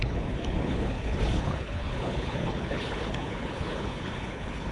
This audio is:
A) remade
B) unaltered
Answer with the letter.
A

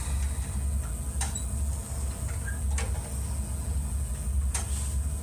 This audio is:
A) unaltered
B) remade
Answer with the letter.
A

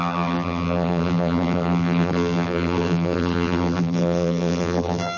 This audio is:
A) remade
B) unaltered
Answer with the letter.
A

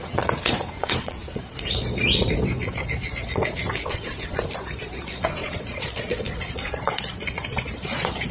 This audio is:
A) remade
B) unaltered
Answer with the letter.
A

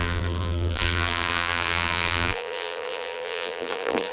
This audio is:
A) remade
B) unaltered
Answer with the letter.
A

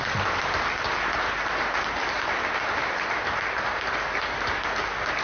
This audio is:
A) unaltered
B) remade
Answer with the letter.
A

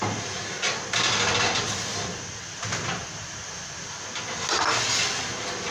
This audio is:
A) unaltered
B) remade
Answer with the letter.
A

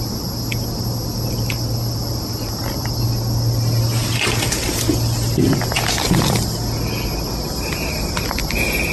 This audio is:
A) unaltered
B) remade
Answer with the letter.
A